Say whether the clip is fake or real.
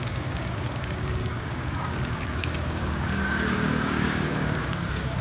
fake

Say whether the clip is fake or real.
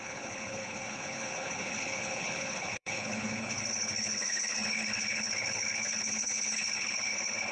fake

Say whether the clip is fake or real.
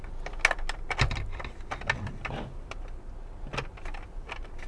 real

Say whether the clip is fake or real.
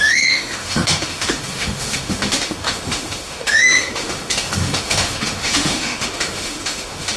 fake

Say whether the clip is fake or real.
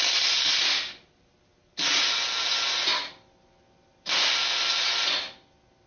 real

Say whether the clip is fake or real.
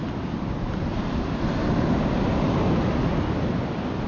real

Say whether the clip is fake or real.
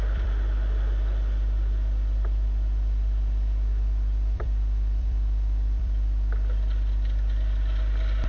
fake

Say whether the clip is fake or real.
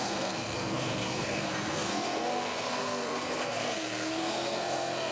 fake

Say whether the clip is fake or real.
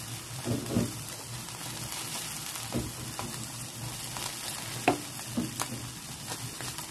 real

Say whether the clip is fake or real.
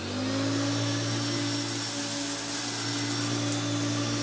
real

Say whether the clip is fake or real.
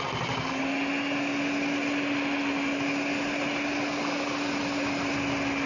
real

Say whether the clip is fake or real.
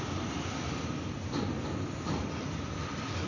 fake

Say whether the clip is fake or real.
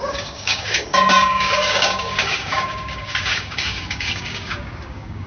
fake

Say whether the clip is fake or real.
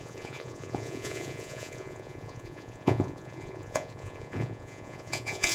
fake